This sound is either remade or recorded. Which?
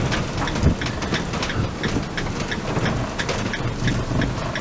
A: recorded